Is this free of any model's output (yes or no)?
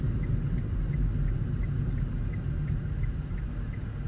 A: yes